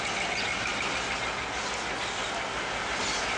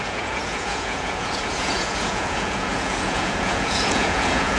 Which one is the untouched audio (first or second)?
first